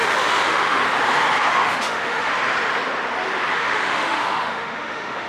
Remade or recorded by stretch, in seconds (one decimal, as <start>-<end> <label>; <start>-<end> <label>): 0.0-0.8 remade; 0.8-1.5 recorded; 1.5-2.3 remade; 2.3-3.5 recorded; 3.5-5.3 remade